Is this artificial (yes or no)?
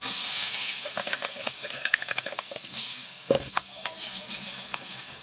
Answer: yes